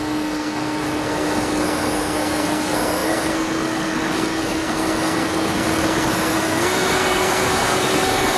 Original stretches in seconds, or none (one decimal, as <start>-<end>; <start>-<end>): none